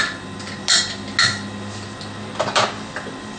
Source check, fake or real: real